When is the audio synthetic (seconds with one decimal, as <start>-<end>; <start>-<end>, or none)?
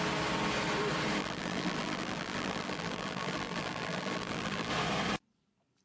1.2-4.7